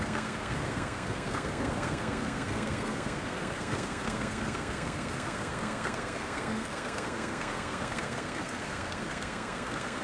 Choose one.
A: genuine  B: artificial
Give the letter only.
B